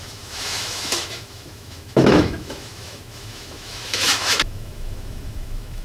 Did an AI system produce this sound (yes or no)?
yes